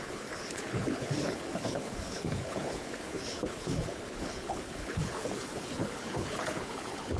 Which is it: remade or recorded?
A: remade